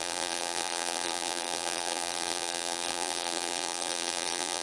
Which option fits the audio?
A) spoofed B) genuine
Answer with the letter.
A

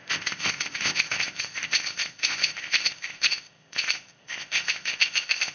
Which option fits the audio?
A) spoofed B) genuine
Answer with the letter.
A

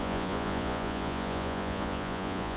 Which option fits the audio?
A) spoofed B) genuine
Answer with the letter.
A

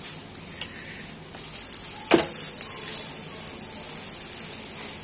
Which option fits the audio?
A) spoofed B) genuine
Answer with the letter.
B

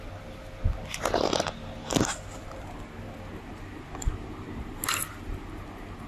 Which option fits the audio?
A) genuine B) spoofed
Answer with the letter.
A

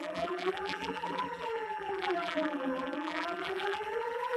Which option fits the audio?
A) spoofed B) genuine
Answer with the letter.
A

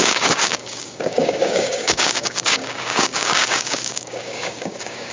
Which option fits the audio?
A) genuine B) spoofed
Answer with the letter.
B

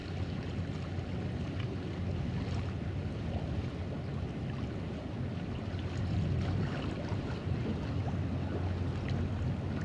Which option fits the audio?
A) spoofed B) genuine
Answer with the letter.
B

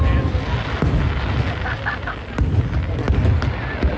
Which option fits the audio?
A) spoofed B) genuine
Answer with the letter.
B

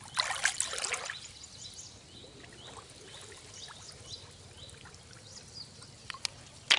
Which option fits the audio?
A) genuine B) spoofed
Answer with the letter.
A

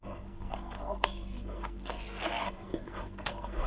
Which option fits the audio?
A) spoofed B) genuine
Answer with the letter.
A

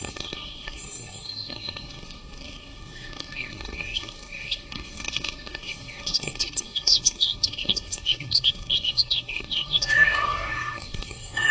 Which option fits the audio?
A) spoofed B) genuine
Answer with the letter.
A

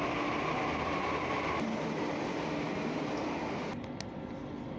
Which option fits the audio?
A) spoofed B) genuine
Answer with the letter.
B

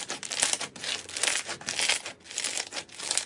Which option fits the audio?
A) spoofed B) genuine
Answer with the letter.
B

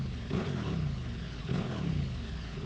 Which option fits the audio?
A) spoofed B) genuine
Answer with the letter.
A